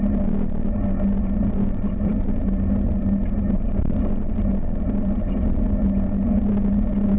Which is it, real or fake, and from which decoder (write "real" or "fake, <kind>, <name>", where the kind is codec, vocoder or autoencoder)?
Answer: real